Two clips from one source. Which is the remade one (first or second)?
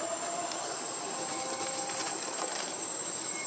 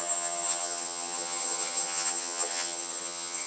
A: second